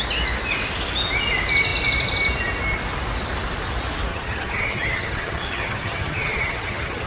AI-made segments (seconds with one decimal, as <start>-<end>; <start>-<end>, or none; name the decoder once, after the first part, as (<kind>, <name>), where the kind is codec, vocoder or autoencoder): 4.1-7.1 (vocoder, HiFi-GAN)